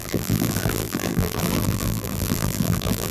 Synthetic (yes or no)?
yes